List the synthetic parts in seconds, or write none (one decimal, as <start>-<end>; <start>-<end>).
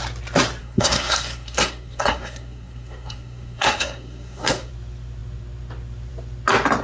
0.6-4.7